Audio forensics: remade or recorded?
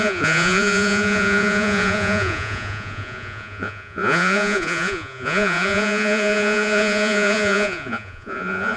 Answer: remade